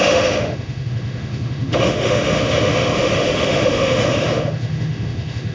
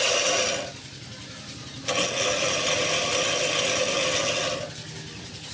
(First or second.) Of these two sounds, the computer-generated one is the first